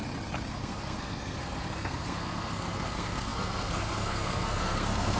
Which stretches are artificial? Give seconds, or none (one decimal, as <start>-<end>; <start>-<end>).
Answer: 0.5-5.2